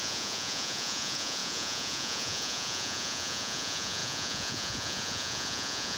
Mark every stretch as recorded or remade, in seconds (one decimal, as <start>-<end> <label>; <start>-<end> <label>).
0.0-6.0 remade

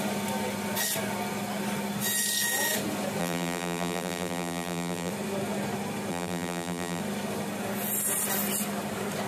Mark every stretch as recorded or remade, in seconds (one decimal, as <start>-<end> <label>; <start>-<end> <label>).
0.0-3.2 recorded; 3.2-5.1 remade; 5.1-6.1 recorded; 6.1-7.0 remade; 7.0-9.3 recorded